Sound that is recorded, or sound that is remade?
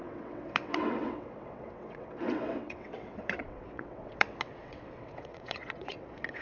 remade